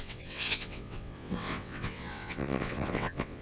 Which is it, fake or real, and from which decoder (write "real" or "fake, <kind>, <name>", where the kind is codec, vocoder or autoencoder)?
fake, vocoder, WaveNeXt